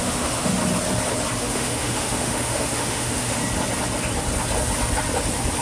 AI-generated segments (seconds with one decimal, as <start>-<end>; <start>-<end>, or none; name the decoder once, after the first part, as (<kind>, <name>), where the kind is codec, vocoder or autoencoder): 0.0-0.6 (autoencoder, DAC-VAE); 1.4-3.4